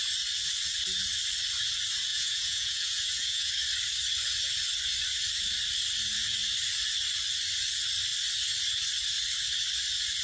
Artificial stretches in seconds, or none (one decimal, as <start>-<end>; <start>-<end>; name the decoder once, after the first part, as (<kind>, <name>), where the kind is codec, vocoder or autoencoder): 2.1-3.5 (vocoder, Vocos)